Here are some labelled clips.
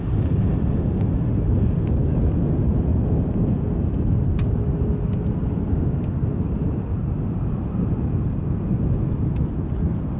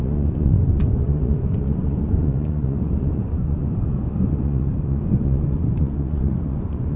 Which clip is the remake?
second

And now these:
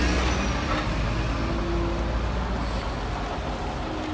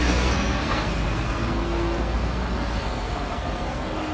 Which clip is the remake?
second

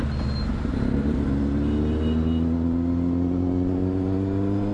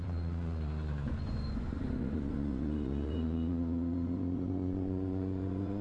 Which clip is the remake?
second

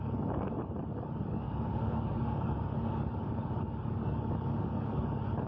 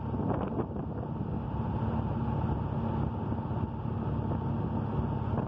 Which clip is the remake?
first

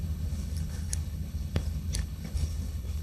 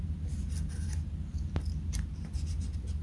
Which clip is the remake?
first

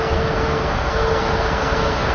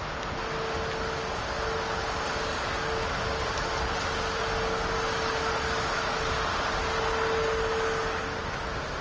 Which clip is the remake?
first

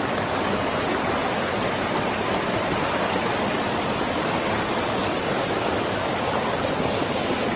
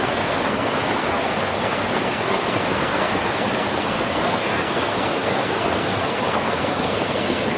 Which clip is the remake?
second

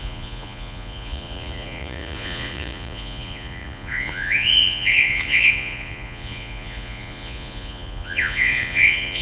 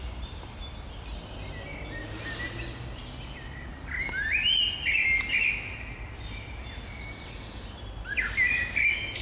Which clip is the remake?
first